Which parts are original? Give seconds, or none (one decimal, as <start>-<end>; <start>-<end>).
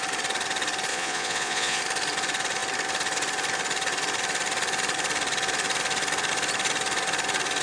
0.0-0.9; 1.8-7.6